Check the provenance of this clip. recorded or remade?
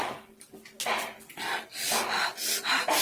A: recorded